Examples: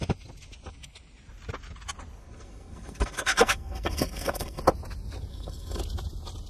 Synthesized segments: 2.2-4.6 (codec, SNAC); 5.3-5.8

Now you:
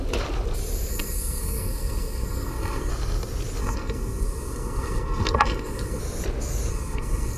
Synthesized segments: 0.9-2.9 (codec, SNAC); 3.6-6.0; 6.7-7.4